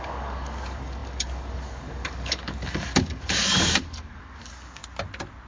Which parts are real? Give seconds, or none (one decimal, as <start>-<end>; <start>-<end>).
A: 4.8-5.5